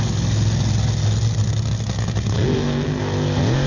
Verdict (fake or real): real